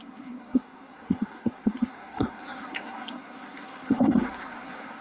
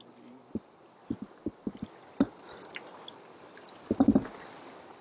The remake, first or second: first